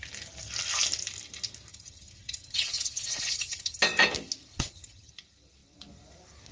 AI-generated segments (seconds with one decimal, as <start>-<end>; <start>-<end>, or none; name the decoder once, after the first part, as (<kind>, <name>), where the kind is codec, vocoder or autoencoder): 1.7-3.8 (vocoder, HiFi-GAN); 4.5-5.1